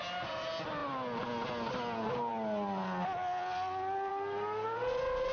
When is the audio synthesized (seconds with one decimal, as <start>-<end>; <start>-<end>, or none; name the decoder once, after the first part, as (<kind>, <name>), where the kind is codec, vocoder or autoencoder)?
none